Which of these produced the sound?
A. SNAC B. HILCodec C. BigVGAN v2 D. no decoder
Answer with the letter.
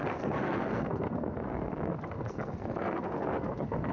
A